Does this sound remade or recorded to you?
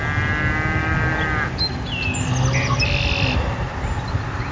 recorded